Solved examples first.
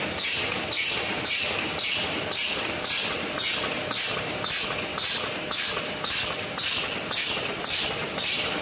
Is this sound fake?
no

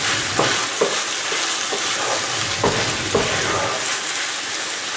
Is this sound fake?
no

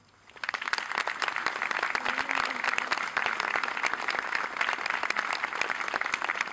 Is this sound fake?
no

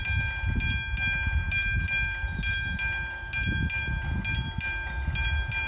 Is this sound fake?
no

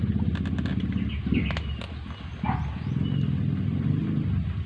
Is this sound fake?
no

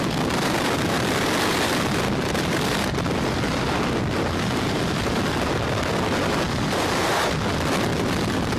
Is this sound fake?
yes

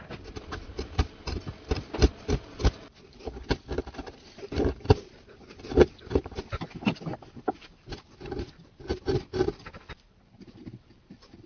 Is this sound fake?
yes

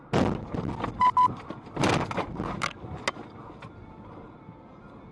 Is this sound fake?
no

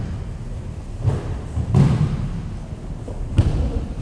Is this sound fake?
no